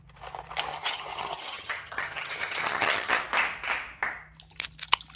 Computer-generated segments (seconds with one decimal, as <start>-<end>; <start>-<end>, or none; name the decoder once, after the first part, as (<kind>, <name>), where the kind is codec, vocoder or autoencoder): 0.7-3.2 (vocoder, HiFi-GAN)